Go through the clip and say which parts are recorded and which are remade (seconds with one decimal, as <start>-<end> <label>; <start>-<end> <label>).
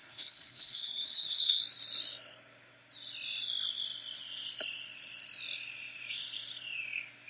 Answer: 0.0-1.6 remade; 1.6-7.3 recorded